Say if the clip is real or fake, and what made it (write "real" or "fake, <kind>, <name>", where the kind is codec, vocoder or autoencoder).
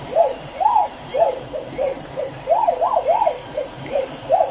fake, vocoder, BigVGAN v2